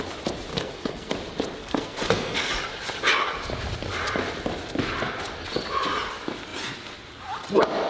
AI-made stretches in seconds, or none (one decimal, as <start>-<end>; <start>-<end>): 0.5-1.1; 1.6-2.5